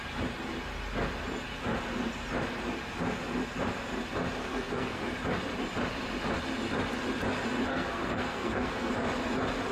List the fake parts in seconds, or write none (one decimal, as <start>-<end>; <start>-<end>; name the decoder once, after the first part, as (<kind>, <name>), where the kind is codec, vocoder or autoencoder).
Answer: 4.4-5.0 (codec, SNAC); 7.7-8.9